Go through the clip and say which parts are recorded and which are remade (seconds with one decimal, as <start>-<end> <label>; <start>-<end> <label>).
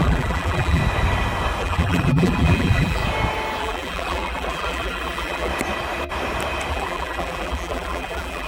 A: 0.0-0.8 remade; 0.8-1.6 recorded; 1.6-3.0 remade; 3.0-3.6 recorded; 3.6-5.5 remade; 5.5-6.7 recorded; 6.7-8.5 remade